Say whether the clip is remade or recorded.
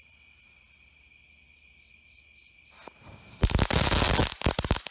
recorded